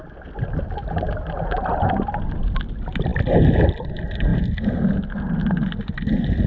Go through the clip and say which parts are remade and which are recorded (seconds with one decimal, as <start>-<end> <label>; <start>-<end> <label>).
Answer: 0.0-6.5 recorded